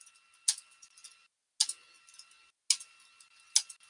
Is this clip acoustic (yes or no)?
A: yes